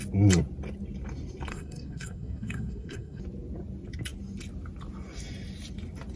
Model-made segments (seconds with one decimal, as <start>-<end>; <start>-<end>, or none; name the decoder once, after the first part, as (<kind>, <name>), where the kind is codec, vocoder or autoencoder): 1.5-3.2 (codec, SNAC)